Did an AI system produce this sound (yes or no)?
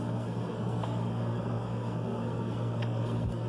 yes